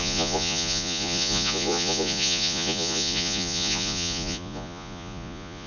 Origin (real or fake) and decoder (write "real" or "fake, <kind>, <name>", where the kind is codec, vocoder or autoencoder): fake, vocoder, Vocos